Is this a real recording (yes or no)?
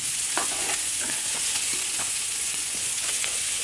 no